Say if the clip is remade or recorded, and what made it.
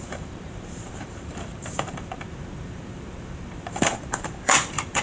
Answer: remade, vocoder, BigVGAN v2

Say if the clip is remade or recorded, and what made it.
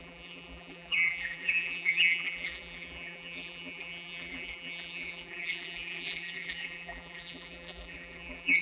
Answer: remade, vocoder, BigVGAN v2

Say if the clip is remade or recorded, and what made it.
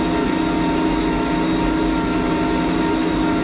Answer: recorded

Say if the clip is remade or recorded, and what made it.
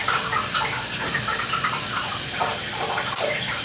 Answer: remade, vocoder, BigVGAN v2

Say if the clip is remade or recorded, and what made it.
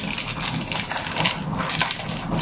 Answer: recorded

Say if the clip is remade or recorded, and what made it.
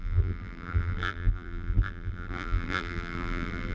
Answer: remade, vocoder, BigVGAN v2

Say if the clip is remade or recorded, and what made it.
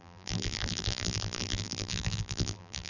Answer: remade, vocoder, BigVGAN v2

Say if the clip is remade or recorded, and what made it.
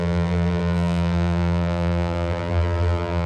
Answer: remade, vocoder, BigVGAN v2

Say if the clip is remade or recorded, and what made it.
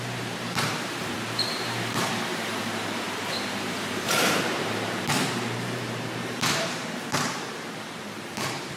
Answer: remade, vocoder, BigVGAN v2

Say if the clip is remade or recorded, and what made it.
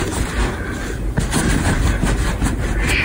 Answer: recorded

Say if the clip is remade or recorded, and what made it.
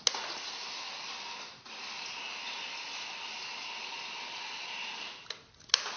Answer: recorded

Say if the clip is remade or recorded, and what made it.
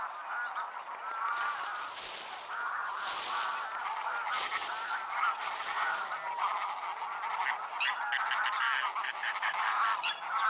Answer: recorded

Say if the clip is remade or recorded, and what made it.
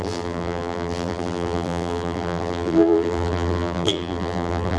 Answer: remade, vocoder, BigVGAN v2